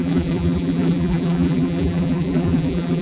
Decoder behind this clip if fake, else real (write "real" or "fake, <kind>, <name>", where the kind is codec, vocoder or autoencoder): fake, vocoder, BigVGAN v2